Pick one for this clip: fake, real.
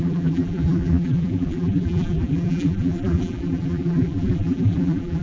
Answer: fake